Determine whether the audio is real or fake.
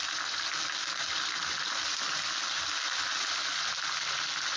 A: real